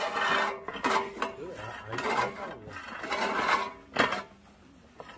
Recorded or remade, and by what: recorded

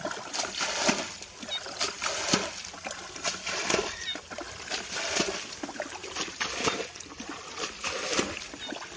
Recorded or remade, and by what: recorded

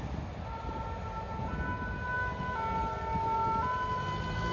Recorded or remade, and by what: recorded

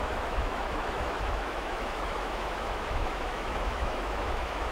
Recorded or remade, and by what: remade, autoencoder, DAC-VAE